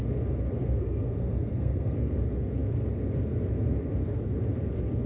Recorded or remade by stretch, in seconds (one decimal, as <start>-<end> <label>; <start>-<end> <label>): 0.0-0.6 recorded; 0.6-2.1 remade; 2.1-5.1 recorded